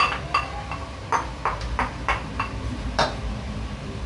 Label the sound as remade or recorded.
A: recorded